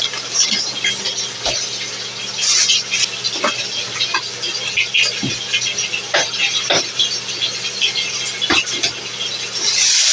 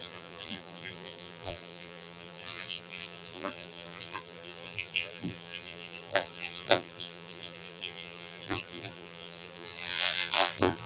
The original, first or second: first